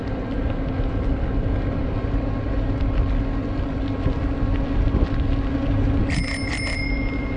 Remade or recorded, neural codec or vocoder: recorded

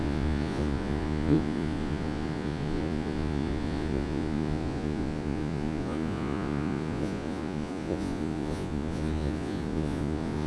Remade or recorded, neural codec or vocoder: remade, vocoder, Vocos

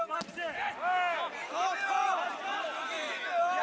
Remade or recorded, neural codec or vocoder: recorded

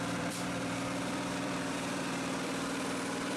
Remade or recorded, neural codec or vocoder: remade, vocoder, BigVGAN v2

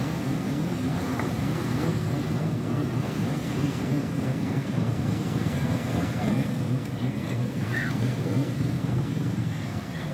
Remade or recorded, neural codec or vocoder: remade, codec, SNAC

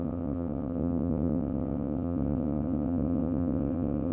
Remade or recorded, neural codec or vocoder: remade, vocoder, WaveNeXt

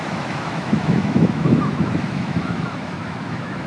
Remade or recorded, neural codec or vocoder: remade, autoencoder, DAC-VAE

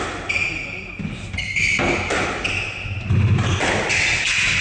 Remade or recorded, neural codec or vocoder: recorded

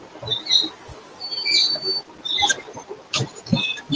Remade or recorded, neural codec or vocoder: recorded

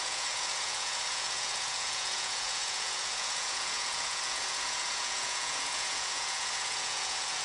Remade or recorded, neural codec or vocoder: remade, vocoder, Vocos